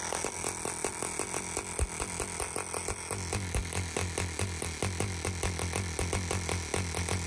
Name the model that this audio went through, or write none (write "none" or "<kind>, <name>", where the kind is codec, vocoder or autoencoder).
none